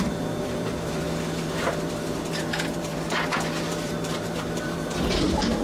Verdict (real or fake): fake